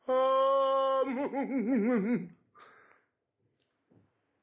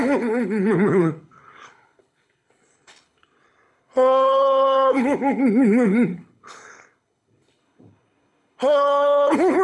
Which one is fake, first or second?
second